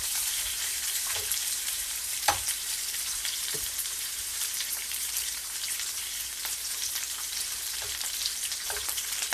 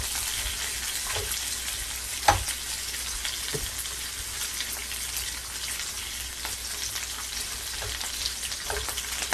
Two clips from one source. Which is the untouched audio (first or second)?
second